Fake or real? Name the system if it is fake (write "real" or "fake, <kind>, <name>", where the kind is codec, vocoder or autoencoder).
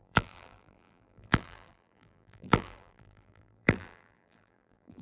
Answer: fake, vocoder, BigVGAN v2